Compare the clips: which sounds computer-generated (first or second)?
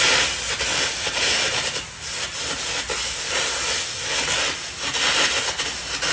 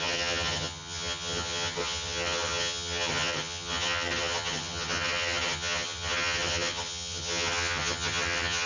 second